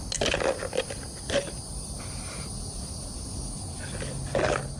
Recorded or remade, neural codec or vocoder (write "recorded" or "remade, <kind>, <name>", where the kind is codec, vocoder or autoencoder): recorded